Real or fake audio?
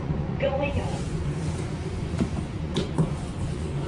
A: fake